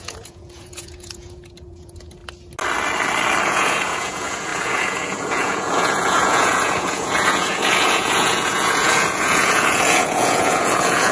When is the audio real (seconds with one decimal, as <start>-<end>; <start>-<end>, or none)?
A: 2.2-3.4

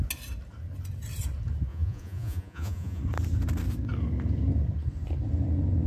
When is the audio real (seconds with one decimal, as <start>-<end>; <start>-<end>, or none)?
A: 0.0-1.7; 3.0-5.9

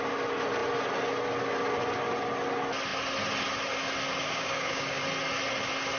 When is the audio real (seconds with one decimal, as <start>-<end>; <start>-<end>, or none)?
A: 0.0-4.2; 5.0-6.0